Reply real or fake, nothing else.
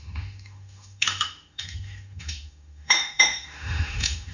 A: fake